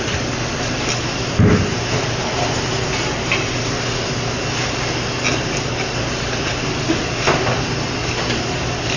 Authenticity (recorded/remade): recorded